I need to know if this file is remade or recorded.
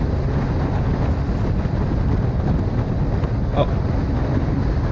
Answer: recorded